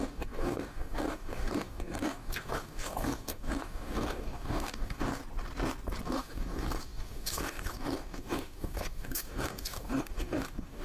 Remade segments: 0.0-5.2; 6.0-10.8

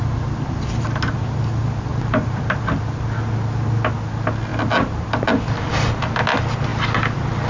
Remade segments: 1.9-2.6